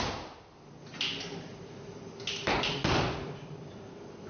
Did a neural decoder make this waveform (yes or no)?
no